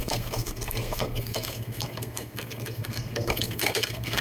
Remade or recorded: remade